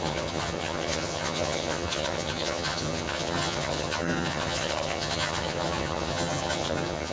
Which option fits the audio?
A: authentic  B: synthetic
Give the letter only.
B